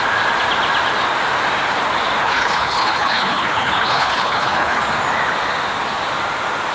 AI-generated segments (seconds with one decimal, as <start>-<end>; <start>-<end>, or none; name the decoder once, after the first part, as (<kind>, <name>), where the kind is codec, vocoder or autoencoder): 2.2-4.8 (codec, HILCodec)